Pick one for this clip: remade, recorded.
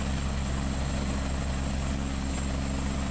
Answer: recorded